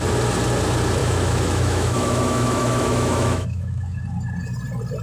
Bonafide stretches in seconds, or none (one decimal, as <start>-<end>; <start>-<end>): 0.0-1.0; 4.0-5.0